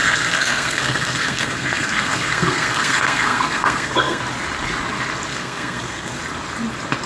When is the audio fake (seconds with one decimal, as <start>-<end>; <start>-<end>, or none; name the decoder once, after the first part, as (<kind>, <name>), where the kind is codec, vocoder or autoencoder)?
0.0-4.2 (codec, SNAC); 5.3-6.2